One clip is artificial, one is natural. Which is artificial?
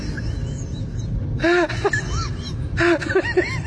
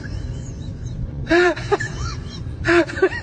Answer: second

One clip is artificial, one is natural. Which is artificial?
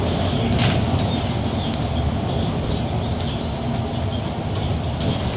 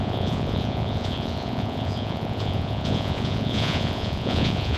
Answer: second